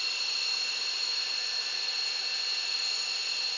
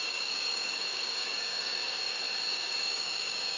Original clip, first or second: first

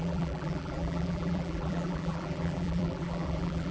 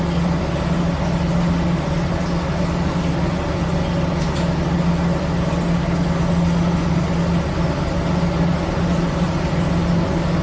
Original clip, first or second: second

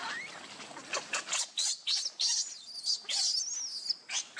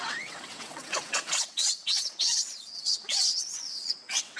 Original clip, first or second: first